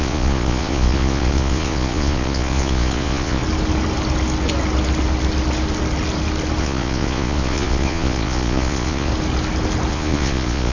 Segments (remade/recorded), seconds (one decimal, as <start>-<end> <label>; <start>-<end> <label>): 0.0-3.4 remade; 3.4-6.6 recorded; 6.6-9.1 remade; 9.1-9.9 recorded; 9.9-10.7 remade